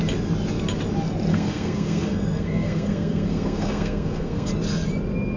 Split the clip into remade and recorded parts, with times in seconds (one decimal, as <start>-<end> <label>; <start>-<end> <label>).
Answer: 0.0-1.3 recorded; 1.3-4.5 remade; 4.5-5.4 recorded